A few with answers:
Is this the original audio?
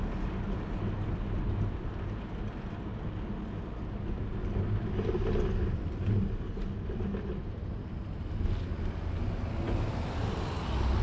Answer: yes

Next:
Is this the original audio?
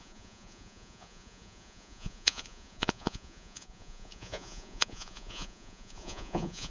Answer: no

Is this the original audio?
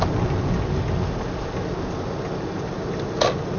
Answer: yes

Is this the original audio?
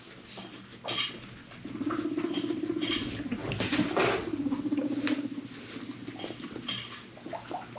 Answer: yes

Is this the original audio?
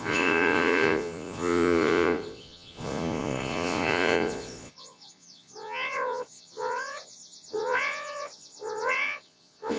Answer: no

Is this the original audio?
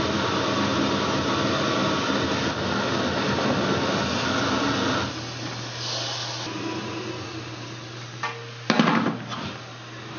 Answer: yes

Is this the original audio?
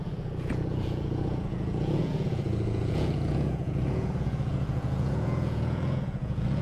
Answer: no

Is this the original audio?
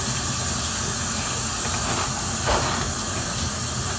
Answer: yes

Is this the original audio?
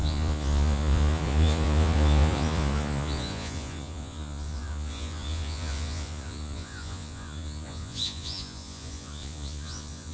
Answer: no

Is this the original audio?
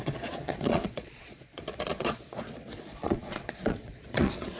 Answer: no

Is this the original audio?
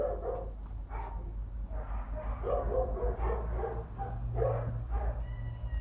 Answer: yes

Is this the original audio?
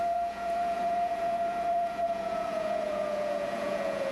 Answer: no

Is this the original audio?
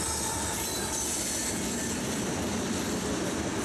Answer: yes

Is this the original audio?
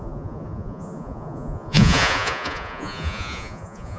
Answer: no